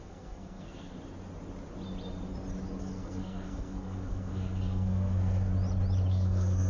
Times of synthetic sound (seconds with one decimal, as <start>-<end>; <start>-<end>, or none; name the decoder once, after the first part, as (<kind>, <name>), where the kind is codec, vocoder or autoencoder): 0.0-0.9 (codec, SNAC); 2.8-5.5; 6.1-6.7